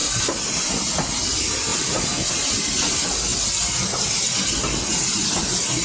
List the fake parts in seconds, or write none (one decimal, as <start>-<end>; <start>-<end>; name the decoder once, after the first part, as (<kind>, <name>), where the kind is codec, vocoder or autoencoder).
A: 0.0-0.7 (vocoder, BigVGAN v2); 1.7-2.3